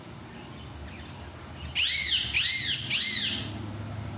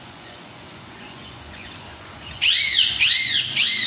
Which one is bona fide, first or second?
first